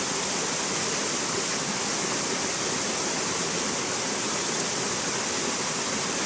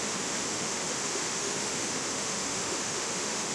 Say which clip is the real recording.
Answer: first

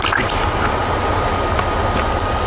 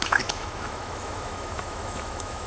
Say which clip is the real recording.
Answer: first